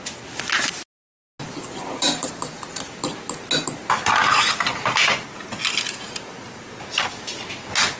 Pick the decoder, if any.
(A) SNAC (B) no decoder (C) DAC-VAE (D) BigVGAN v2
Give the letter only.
B